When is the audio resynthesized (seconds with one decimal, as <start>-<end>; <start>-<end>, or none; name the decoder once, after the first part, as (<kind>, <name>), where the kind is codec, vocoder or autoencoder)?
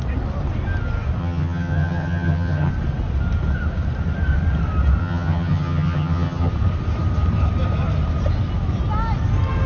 1.2-2.7 (vocoder, HiFi-GAN); 5.0-6.5